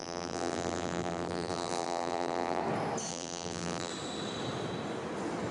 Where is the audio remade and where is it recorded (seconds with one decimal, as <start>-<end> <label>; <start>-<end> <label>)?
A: 0.0-2.6 remade; 2.6-3.1 recorded; 3.1-3.9 remade; 3.9-5.5 recorded